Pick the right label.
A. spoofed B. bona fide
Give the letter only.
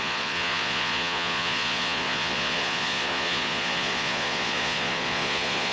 A